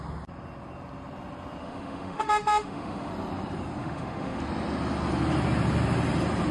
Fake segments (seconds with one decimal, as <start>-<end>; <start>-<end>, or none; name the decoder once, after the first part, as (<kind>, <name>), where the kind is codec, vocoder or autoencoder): 1.6-3.1 (autoencoder, DAC-VAE); 3.8-4.4